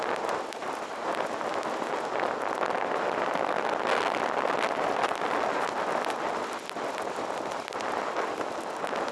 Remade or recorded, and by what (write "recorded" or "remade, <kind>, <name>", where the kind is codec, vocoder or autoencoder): recorded